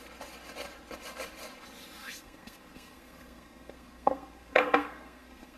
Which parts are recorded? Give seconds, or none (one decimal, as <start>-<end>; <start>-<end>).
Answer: 0.0-2.0